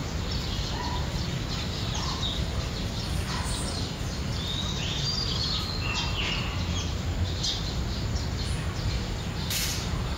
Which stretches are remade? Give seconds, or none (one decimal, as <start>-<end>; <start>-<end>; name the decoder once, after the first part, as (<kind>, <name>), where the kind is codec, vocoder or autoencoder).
9.7-10.2 (vocoder, BigVGAN v2)